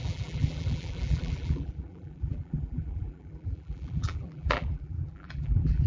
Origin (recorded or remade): remade